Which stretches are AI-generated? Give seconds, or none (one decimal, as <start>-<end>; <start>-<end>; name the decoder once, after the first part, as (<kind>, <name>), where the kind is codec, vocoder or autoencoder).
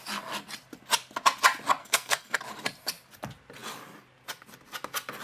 1.8-2.4 (codec, SNAC)